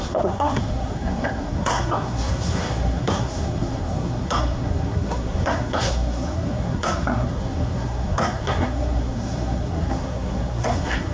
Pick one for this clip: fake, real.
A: fake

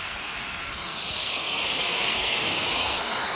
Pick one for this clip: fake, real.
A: fake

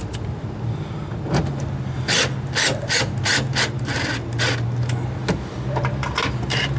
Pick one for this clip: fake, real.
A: real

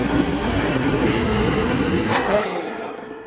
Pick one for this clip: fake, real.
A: fake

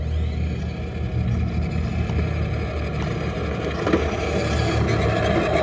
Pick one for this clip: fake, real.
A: real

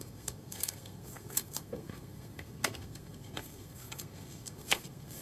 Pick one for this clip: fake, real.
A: fake